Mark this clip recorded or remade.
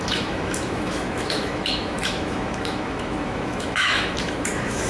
remade